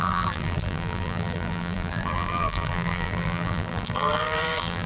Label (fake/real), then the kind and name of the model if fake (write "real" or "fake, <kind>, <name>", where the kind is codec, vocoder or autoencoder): fake, vocoder, BigVGAN v2